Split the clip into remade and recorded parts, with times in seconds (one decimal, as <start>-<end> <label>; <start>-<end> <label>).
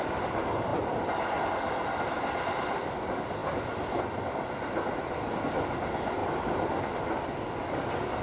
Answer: 0.0-8.2 recorded